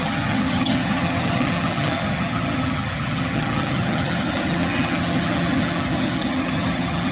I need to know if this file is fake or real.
fake